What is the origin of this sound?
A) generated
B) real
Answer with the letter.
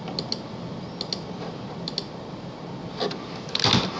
B